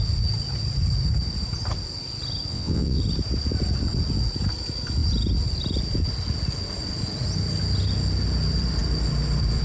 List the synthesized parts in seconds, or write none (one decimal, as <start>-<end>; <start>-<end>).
2.5-3.0